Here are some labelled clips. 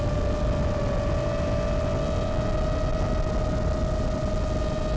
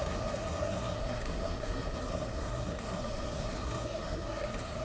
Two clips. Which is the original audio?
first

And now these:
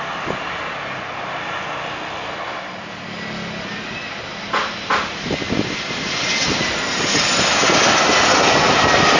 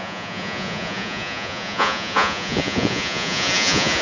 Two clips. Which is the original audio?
first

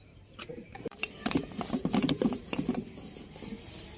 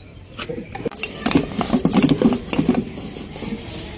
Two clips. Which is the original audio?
second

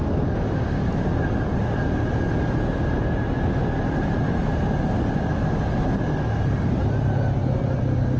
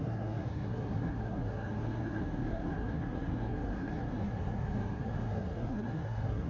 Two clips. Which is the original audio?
first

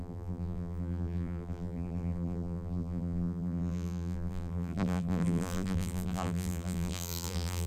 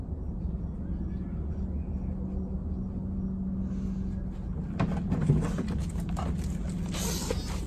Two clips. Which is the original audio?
second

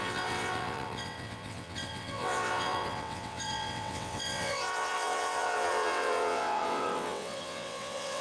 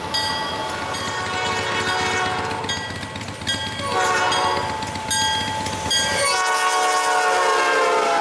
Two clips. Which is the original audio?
second